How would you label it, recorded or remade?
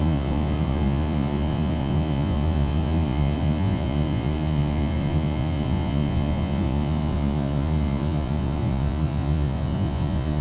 remade